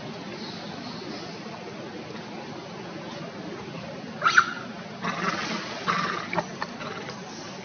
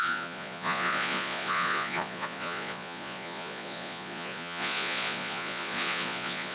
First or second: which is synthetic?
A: second